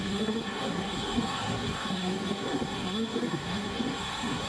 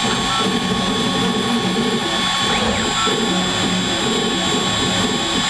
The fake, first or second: first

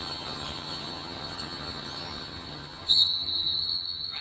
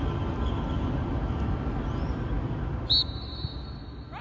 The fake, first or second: first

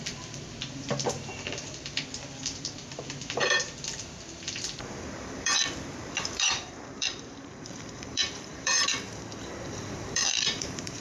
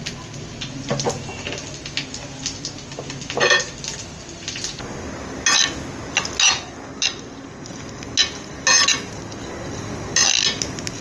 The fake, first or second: first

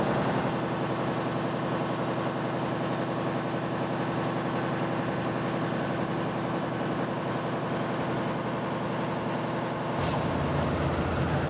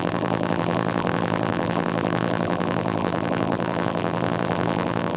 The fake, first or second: second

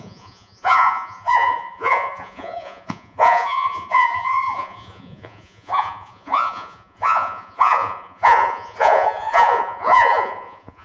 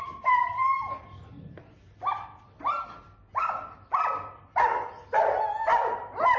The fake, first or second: first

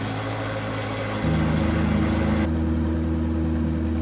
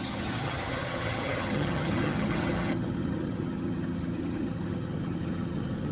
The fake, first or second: second